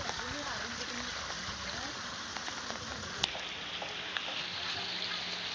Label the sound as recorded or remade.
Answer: recorded